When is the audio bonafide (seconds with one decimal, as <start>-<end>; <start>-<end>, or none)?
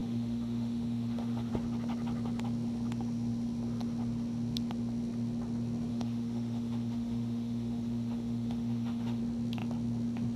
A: 1.5-5.9; 9.2-10.4